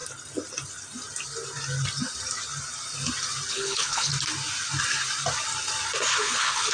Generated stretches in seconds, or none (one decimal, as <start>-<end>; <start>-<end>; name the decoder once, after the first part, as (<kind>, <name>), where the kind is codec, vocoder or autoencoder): 3.5-4.1 (codec, HILCodec); 6.2-6.7